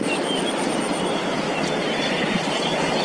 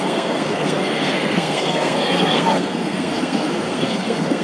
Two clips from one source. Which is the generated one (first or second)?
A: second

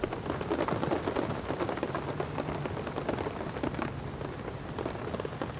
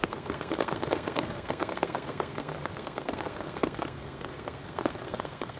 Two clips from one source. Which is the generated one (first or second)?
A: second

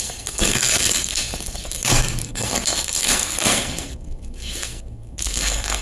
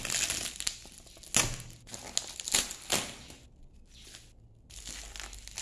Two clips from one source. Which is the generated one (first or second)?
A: first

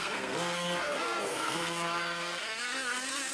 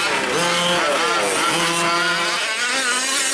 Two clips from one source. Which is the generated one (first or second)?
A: first